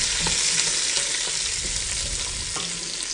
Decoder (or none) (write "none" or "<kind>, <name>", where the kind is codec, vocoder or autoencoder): none